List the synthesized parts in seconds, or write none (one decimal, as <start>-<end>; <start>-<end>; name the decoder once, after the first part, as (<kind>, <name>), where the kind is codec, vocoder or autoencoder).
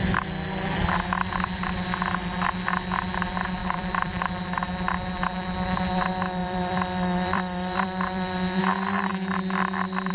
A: 3.6-4.2 (vocoder, BigVGAN v2); 6.4-8.6